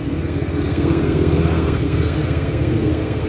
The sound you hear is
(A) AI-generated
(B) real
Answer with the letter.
A